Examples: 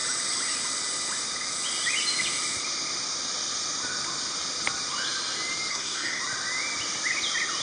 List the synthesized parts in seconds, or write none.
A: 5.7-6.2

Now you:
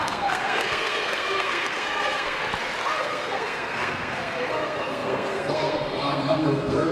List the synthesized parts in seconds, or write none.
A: 0.0-2.4; 3.0-6.9

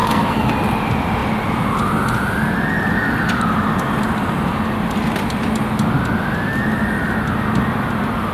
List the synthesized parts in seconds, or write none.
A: 0.0-0.5

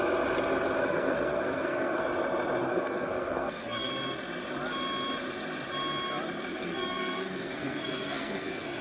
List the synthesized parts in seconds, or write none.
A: 0.8-2.0; 2.6-3.9; 6.5-8.8

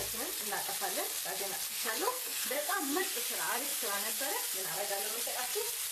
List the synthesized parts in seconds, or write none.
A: 1.7-3.0

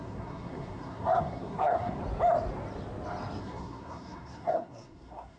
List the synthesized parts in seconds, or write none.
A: 0.0-2.0; 3.4-5.4

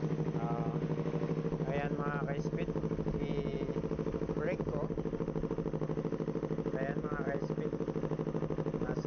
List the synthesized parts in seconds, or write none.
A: none